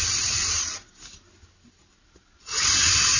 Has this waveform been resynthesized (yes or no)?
no